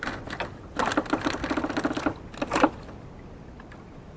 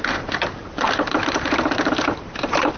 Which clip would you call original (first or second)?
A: first